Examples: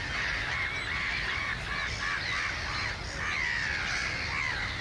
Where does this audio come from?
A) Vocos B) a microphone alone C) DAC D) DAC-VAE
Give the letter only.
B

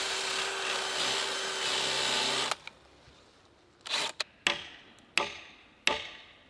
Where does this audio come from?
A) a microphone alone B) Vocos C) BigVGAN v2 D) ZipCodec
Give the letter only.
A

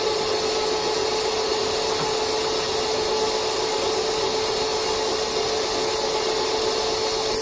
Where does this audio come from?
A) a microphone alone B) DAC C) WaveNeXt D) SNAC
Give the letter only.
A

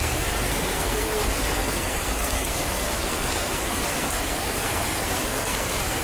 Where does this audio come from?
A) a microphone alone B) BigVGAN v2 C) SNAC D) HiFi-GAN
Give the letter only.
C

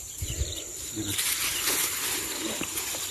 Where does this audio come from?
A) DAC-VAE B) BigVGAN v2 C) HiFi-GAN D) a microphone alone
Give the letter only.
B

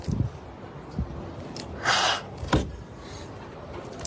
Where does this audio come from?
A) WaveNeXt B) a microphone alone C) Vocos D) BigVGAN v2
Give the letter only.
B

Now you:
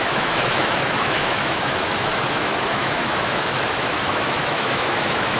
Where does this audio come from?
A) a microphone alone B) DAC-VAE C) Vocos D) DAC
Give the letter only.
B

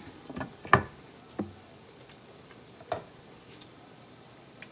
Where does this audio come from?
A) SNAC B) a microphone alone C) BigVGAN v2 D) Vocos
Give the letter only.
B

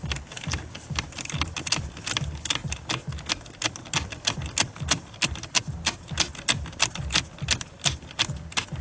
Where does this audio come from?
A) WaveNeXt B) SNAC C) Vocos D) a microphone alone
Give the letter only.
D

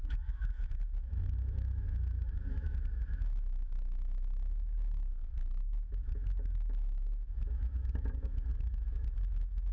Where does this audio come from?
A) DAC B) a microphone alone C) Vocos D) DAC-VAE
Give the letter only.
D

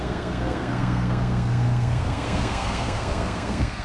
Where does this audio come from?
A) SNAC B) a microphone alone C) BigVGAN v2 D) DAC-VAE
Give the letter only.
A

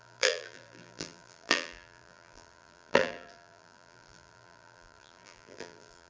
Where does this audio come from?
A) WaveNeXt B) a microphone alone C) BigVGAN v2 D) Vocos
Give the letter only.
C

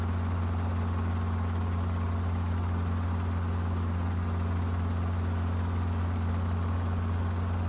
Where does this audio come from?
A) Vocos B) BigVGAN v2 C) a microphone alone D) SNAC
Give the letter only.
C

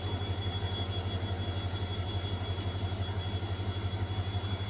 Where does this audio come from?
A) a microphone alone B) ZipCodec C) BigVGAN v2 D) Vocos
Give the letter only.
A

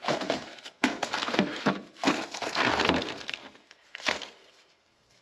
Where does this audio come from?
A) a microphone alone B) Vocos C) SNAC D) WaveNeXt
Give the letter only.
C